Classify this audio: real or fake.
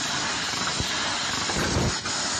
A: real